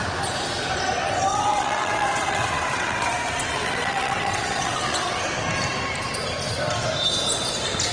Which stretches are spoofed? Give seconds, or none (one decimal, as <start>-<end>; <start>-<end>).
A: 1.3-3.1; 3.5-5.2